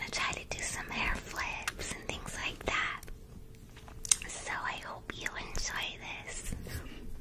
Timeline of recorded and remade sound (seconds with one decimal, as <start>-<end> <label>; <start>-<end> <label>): 0.0-7.2 recorded

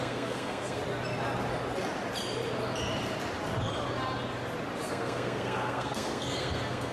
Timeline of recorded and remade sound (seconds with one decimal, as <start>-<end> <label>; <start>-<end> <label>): 0.0-0.8 remade; 0.8-4.9 recorded; 4.9-6.9 remade

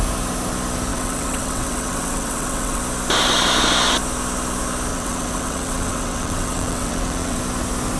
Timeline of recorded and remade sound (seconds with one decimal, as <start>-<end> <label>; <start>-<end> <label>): 0.0-0.9 recorded; 0.9-2.8 remade; 2.8-4.9 recorded; 4.9-7.4 remade; 7.4-8.0 recorded

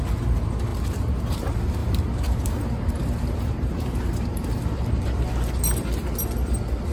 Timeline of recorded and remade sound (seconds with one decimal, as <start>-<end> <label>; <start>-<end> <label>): 0.0-1.8 recorded; 1.8-4.6 remade; 4.6-6.9 recorded